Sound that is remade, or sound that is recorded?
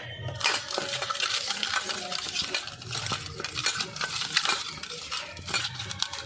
remade